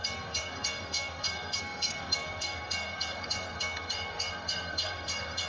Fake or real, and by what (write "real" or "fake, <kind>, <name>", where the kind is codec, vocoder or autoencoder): fake, codec, SNAC